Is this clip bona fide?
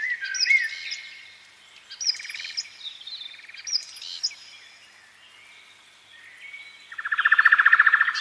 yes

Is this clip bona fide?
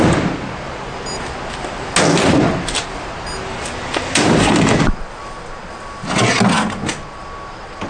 yes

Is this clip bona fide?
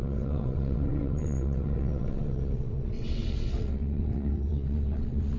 no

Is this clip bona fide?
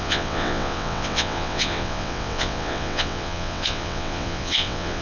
no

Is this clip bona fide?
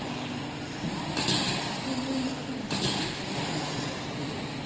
yes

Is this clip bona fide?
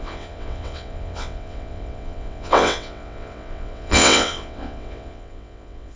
no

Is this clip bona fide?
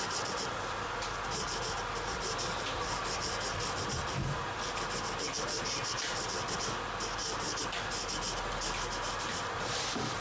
yes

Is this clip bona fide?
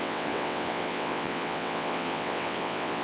no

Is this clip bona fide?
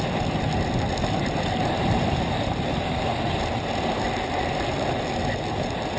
yes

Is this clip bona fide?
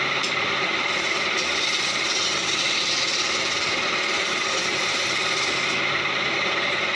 yes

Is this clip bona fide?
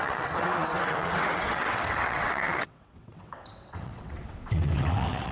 no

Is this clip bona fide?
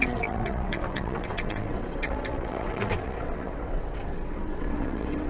no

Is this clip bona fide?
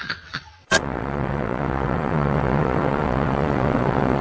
no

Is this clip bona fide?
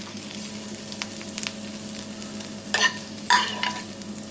yes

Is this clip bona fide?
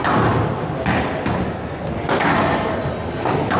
yes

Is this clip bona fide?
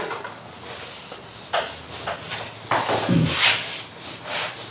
yes